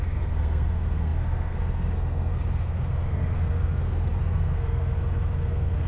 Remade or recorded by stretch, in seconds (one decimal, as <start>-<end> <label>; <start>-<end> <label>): 0.0-5.9 remade